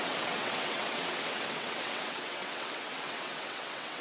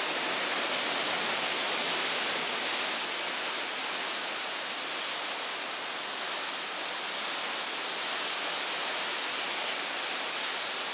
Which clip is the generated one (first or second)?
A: first